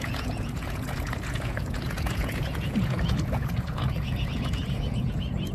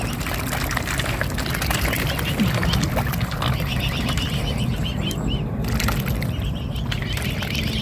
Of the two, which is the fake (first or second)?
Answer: first